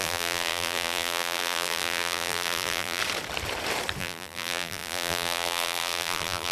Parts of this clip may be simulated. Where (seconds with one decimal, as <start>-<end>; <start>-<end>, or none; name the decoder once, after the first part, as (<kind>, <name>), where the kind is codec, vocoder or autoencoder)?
0.0-3.0 (vocoder, BigVGAN v2); 4.0-6.5